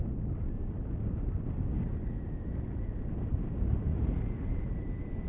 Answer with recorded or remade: recorded